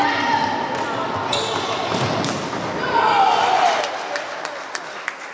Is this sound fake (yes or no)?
no